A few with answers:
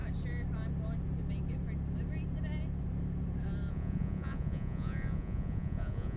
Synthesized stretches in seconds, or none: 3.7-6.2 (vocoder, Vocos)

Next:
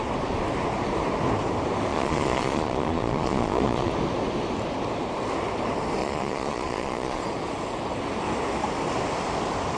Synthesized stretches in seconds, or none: 1.9-3.9 (vocoder, Vocos); 6.0-7.2

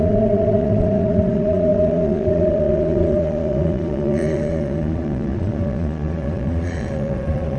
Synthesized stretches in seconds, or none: 0.0-7.6 (vocoder, Vocos)